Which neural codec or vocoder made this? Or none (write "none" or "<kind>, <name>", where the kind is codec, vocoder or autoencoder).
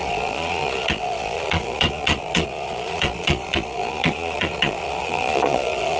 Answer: vocoder, Vocos